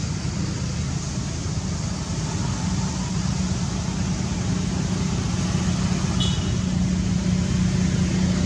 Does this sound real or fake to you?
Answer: real